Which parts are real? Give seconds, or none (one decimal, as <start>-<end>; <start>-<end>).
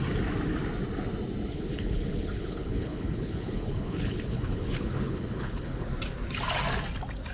0.0-1.5; 5.9-7.3